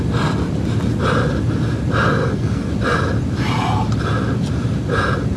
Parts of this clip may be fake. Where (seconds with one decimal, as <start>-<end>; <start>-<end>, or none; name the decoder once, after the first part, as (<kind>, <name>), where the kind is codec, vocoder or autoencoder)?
2.2-2.7 (codec, SNAC)